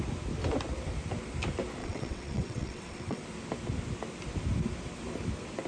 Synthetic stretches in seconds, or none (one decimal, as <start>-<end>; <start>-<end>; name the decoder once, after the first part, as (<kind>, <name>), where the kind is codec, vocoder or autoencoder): 1.8-3.2 (vocoder, WaveNeXt)